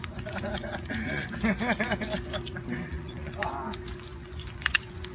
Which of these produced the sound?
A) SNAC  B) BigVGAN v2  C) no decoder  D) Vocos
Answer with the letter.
D